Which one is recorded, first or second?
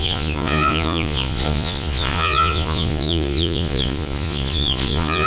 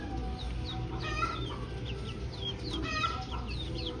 second